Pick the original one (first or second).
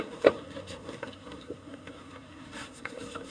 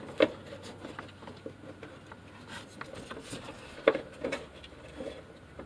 second